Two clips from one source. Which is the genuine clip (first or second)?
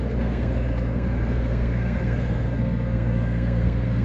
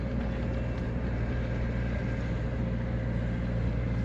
second